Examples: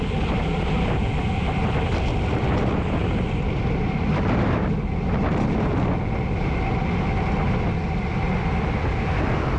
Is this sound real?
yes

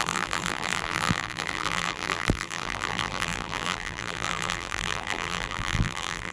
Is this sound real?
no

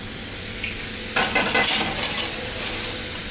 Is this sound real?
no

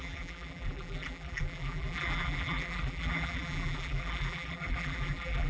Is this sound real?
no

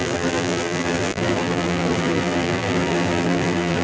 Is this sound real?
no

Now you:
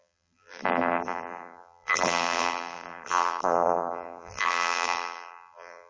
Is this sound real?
no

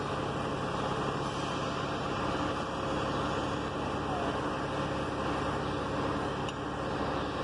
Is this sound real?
yes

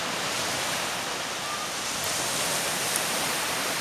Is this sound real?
yes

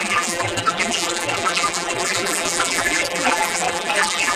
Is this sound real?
no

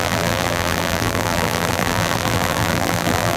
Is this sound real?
no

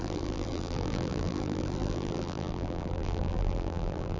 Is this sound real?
no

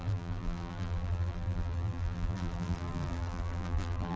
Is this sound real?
no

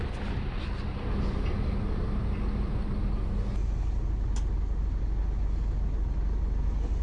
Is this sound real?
yes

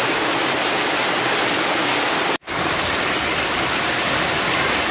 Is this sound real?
yes